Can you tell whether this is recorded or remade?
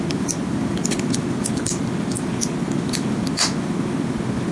recorded